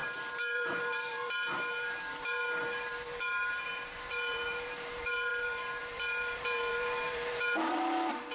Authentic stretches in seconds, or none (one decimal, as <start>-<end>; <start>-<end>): none